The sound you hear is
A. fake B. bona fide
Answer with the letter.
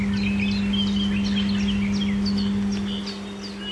B